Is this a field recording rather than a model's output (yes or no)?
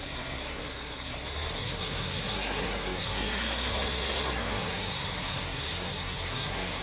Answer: no